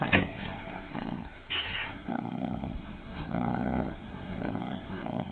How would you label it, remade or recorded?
remade